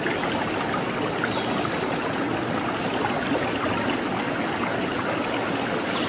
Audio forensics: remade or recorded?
recorded